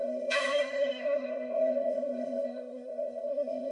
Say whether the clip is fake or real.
fake